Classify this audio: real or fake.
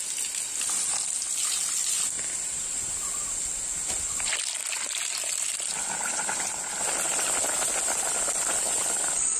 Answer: real